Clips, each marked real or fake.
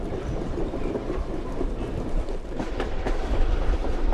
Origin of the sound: fake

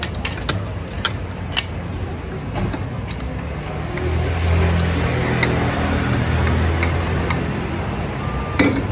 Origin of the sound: real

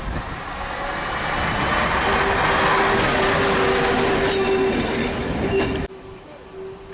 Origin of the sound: real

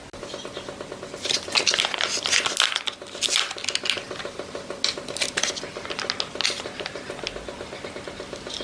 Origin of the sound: real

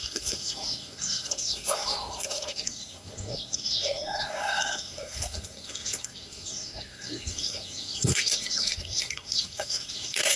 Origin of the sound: fake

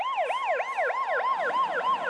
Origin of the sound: real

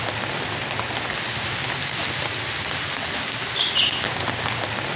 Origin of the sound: real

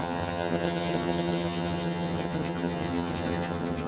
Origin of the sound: fake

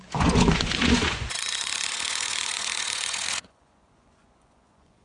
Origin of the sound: fake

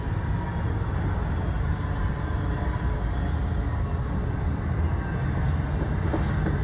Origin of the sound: real